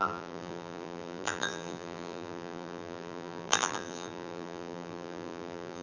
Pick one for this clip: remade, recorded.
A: remade